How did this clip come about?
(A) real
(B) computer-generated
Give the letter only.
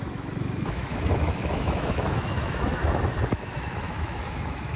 B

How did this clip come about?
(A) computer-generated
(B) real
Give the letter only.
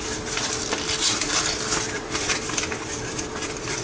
B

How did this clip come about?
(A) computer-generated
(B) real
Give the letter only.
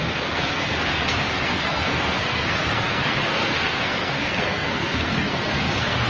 A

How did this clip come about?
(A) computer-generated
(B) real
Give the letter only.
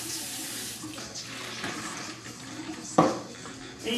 A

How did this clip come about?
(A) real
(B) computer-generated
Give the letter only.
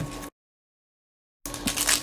A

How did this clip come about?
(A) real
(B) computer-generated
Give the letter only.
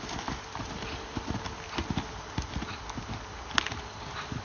A